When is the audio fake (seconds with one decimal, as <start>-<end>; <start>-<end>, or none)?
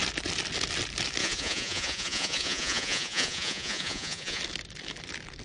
1.2-4.4